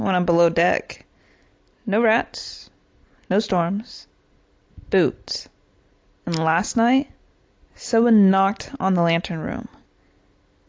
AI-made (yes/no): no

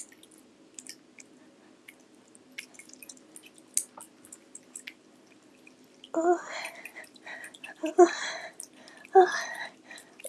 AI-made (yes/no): no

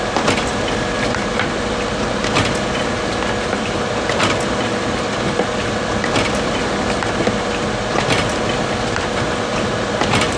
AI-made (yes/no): no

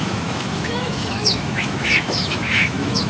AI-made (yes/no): yes